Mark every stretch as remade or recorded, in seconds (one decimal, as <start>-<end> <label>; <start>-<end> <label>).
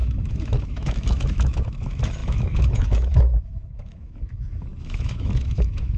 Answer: 0.0-6.0 remade